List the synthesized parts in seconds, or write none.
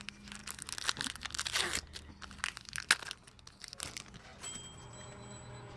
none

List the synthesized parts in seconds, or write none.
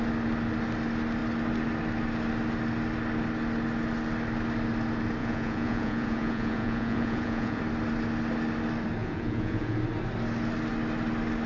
5.2-7.6 (vocoder, Vocos); 9.0-9.8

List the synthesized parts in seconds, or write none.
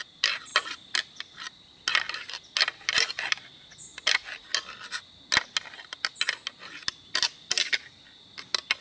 none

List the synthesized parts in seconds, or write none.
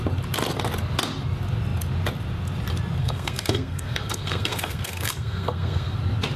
3.0-6.0 (codec, SNAC)